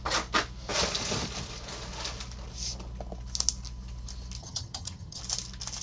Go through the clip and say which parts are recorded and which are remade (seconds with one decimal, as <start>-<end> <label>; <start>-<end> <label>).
0.0-4.4 recorded; 4.4-5.2 remade; 5.2-5.8 recorded